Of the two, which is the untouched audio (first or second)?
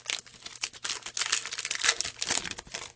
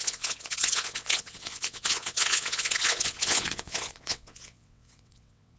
first